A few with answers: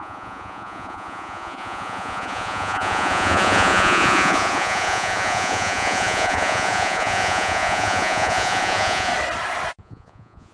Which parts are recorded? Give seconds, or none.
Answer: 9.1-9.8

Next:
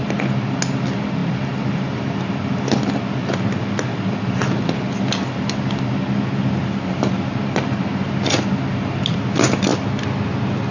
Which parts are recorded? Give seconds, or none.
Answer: 0.0-10.7

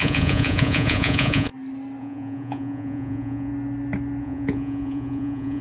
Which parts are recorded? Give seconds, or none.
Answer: 1.5-2.0; 3.5-4.2

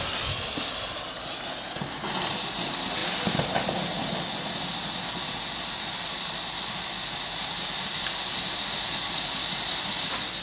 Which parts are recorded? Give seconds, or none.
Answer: 0.0-10.4

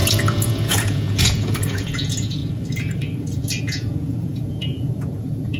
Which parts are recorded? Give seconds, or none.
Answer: 2.4-3.6

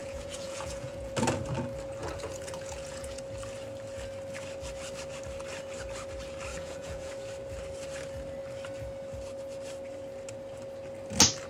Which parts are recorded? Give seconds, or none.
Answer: 1.1-2.0; 3.2-6.5; 7.1-11.5

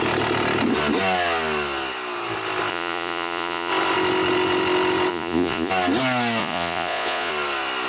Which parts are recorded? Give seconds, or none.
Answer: 0.0-2.7; 3.7-5.1; 5.7-6.4; 7.3-7.9